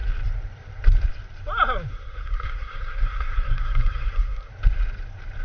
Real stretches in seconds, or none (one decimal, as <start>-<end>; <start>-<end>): 0.0-1.9; 4.5-5.4